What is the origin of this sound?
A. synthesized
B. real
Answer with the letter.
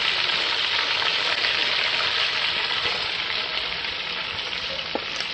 B